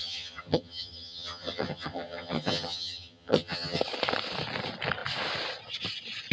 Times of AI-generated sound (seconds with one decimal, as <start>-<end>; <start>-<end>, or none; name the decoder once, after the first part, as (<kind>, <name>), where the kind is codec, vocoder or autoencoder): 0.0-3.8 (vocoder, HiFi-GAN)